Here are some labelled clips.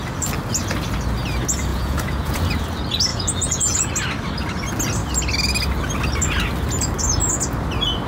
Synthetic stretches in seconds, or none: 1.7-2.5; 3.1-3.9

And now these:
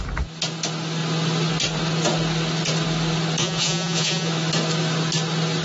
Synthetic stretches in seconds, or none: 3.4-4.3

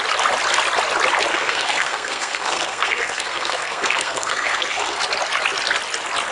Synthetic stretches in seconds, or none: 1.3-5.0

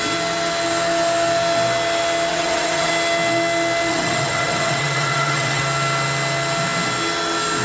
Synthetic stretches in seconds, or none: 2.3-2.9; 3.9-5.6